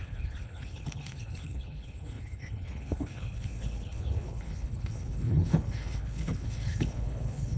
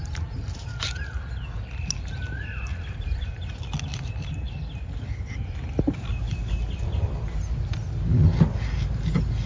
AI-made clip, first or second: first